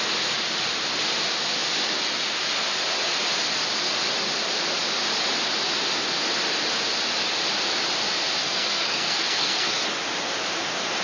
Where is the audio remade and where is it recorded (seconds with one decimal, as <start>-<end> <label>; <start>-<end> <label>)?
0.0-8.4 recorded; 8.4-9.8 remade; 9.8-11.0 recorded